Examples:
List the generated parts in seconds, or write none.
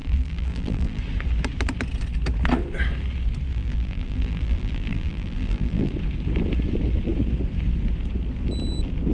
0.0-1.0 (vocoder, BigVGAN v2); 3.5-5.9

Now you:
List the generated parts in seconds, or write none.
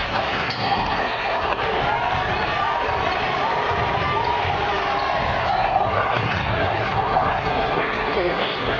0.0-1.6 (codec, SNAC); 5.4-8.8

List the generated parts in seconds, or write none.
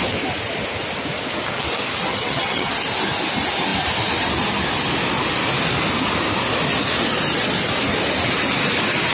2.1-2.7 (vocoder, HiFi-GAN)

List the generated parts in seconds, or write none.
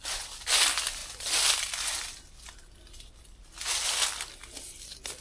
none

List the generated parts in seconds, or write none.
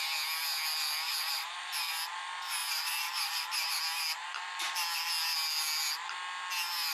1.1-1.9 (vocoder, BigVGAN v2); 2.6-3.8; 4.2-4.7